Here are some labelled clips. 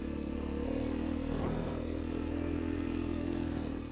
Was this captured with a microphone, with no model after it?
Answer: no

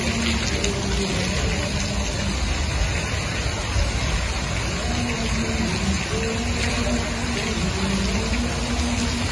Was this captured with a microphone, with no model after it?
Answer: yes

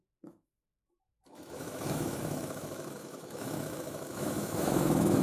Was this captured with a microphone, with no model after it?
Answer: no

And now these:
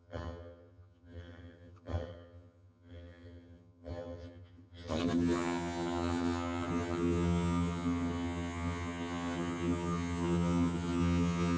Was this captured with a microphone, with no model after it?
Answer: no